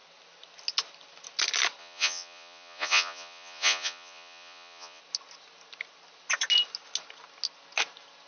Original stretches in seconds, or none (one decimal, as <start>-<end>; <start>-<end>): 0.0-1.8; 5.0-8.3